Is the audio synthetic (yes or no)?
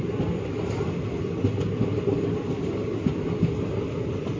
no